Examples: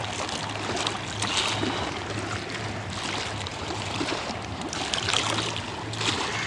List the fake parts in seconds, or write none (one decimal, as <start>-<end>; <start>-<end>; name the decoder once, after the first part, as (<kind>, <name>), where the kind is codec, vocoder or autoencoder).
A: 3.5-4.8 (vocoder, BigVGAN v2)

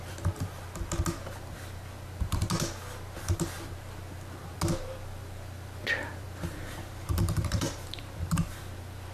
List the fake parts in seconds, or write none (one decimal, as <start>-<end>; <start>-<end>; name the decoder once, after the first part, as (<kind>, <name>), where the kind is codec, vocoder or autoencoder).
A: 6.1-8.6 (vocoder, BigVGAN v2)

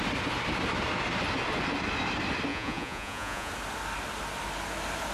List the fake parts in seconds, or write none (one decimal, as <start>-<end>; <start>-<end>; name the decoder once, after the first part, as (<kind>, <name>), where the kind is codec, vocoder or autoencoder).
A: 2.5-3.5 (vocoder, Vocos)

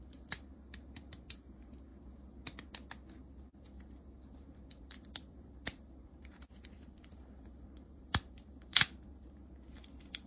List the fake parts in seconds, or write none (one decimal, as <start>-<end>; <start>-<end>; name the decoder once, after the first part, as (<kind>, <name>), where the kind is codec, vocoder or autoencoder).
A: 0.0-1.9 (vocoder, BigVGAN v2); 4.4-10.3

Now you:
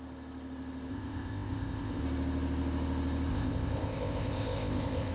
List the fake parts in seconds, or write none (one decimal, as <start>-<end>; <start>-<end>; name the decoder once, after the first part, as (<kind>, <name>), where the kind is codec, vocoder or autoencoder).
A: 0.9-2.0 (codec, ZipCodec); 3.3-5.1

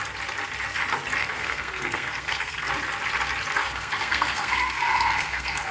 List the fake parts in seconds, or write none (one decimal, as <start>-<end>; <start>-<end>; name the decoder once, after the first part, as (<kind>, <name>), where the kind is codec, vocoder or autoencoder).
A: 1.2-2.7 (codec, SNAC); 3.6-5.7